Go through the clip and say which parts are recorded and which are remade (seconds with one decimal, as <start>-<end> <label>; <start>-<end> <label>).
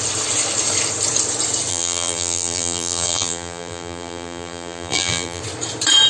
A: 0.0-1.7 recorded; 1.7-5.4 remade; 5.4-6.1 recorded